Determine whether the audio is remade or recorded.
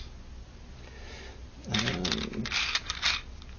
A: recorded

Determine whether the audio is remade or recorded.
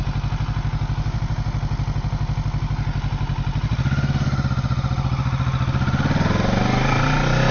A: recorded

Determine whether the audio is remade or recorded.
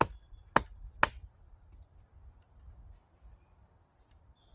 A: recorded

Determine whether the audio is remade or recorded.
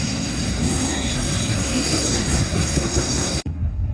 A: remade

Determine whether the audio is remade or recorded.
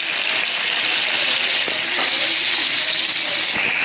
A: recorded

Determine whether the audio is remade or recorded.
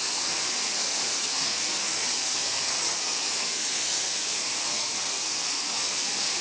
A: remade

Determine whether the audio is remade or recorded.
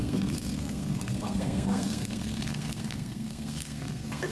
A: remade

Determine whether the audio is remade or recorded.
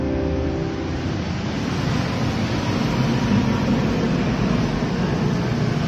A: recorded